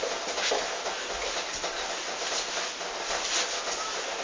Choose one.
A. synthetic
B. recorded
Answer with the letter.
B